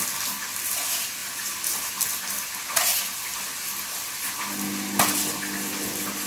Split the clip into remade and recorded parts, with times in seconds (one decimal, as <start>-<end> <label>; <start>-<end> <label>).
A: 0.0-6.3 recorded